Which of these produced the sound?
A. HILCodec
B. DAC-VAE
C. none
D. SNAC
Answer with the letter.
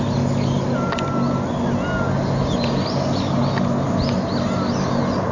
C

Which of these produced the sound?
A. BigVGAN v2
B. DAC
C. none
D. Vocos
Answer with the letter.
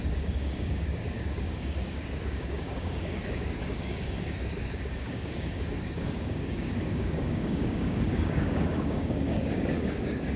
B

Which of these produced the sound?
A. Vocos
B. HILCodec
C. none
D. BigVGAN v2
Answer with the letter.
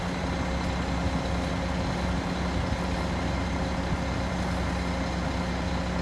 C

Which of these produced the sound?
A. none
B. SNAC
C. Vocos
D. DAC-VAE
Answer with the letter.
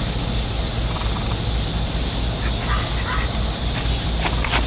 A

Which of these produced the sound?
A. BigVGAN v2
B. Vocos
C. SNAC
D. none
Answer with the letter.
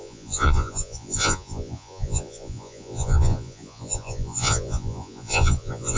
B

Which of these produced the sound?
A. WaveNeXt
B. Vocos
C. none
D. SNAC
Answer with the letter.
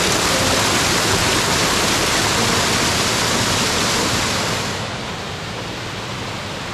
C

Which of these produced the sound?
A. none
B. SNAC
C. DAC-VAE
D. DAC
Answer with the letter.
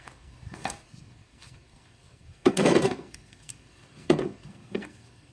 B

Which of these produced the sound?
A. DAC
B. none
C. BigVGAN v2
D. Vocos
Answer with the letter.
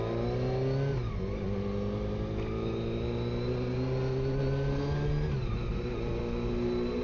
B